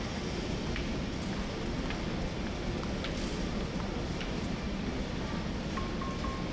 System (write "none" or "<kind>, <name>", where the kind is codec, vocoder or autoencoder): none